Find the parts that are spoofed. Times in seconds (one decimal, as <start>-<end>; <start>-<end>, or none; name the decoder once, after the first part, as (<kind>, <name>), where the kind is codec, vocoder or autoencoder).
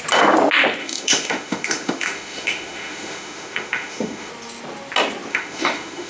0.8-4.3 (autoencoder, DAC-VAE); 5.3-6.1